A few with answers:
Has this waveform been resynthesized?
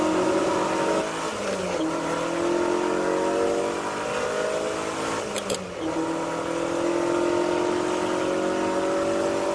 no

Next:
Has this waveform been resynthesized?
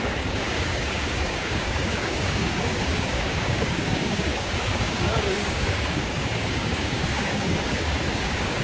yes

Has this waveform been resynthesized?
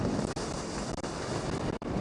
no